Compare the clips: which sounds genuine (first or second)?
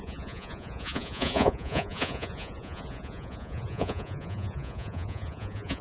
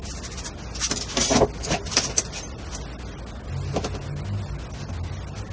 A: second